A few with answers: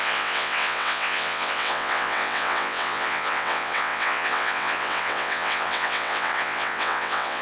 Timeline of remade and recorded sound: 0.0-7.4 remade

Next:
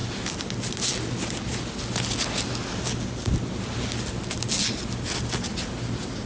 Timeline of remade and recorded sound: 0.0-6.3 recorded